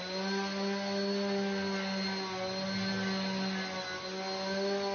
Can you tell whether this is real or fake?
real